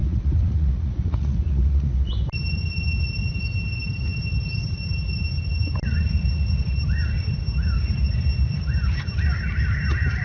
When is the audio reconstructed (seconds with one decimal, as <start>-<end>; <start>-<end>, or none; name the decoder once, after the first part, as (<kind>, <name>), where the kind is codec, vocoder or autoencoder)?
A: 0.0-2.1 (vocoder, Vocos)